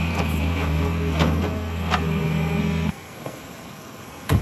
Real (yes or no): no